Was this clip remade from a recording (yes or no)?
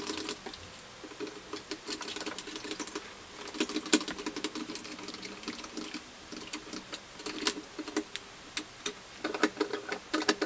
no